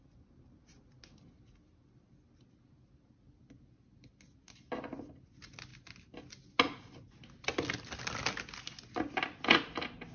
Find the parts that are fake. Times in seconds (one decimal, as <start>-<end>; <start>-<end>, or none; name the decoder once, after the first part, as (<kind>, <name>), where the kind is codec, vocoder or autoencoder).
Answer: none